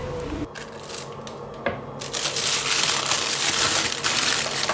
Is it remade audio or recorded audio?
recorded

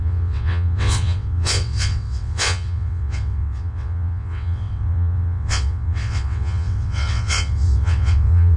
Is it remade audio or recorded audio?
remade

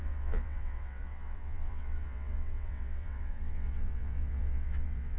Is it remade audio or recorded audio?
remade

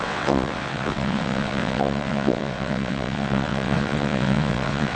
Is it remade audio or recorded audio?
remade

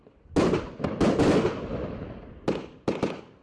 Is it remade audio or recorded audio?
recorded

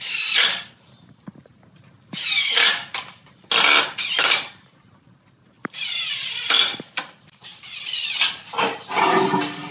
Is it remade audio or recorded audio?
recorded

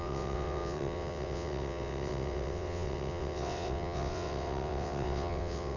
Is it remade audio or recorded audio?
remade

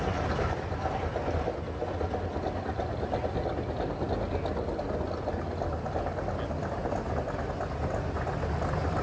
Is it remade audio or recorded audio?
recorded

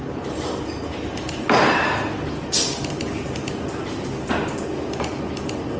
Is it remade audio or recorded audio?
recorded